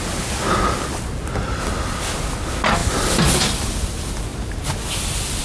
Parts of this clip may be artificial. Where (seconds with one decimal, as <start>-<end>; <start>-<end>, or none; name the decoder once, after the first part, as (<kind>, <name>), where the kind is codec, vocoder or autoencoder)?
none